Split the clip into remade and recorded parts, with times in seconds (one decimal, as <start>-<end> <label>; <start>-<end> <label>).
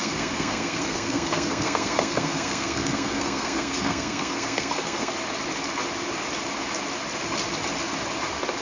0.0-5.1 remade; 5.1-8.6 recorded